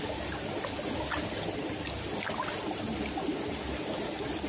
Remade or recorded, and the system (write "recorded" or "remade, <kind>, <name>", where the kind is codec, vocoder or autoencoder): recorded